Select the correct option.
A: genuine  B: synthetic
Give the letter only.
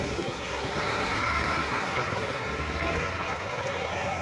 B